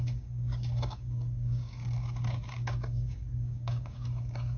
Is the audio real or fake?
fake